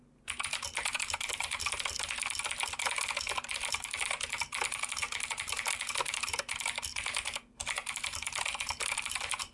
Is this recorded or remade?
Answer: recorded